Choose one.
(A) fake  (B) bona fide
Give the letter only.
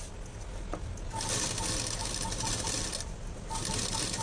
B